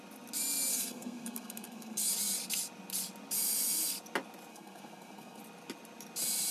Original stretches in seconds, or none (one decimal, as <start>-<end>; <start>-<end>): 0.0-0.7; 2.1-4.5; 5.4-6.5